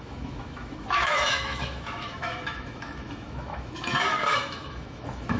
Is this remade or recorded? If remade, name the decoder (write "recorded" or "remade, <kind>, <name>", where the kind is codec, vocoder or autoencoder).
remade, autoencoder, DAC-VAE